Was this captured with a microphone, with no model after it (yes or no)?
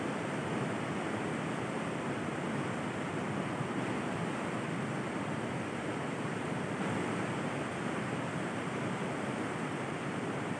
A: yes